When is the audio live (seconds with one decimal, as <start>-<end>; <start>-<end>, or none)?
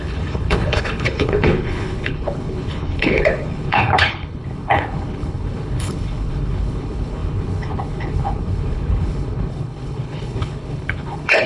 none